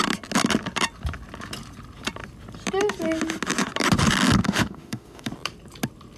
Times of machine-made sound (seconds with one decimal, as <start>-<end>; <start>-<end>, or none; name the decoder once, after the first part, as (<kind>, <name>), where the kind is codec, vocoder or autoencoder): 4.4-5.3 (autoencoder, DAC-VAE)